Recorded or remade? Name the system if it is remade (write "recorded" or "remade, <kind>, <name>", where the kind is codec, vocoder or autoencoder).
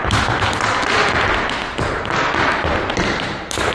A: recorded